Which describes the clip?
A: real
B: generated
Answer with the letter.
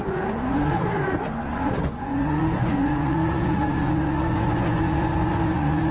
B